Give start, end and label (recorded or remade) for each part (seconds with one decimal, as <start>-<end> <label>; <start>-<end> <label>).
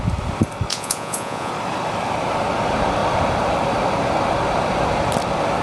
0.0-0.7 recorded; 0.7-1.5 remade; 1.5-5.6 recorded